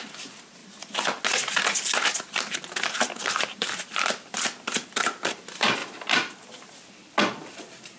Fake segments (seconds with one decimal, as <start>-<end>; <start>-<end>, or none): 0.0-0.6; 3.2-8.0